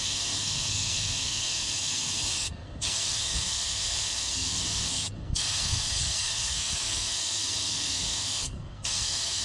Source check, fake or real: fake